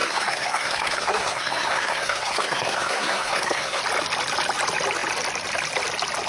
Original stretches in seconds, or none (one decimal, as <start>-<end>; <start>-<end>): 3.8-6.3